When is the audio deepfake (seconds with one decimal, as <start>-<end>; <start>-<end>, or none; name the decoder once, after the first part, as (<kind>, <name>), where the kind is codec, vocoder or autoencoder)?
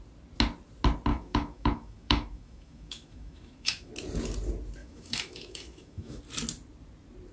1.1-3.9 (autoencoder, DAC-VAE); 4.8-6.2